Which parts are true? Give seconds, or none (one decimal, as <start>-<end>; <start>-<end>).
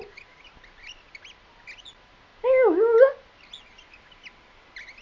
0.0-5.0